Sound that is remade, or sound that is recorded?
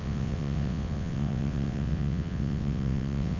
remade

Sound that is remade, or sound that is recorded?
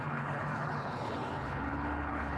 remade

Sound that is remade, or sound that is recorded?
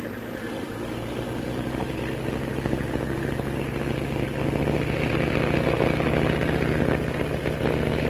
recorded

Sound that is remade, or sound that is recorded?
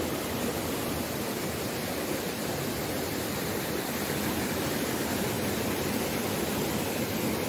recorded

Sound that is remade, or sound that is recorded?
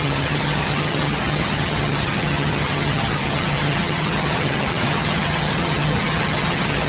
remade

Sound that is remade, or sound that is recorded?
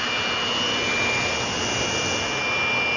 recorded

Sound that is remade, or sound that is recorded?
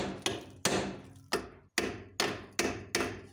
recorded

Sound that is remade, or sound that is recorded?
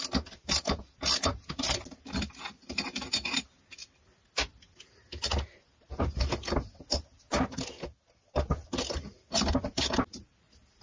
recorded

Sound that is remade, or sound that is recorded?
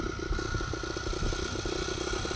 recorded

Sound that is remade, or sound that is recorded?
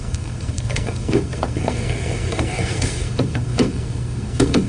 remade